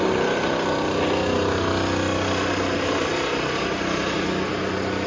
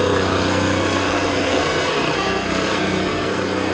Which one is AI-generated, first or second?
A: second